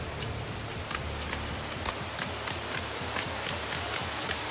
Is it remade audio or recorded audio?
recorded